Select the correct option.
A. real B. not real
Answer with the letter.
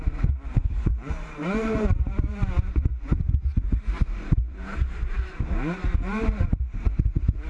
B